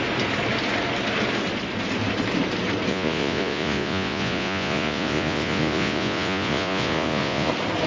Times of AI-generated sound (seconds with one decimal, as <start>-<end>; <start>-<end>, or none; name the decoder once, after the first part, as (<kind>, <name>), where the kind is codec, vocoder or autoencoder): 2.9-7.5 (vocoder, Vocos)